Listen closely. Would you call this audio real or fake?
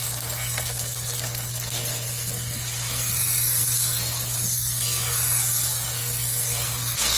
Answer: fake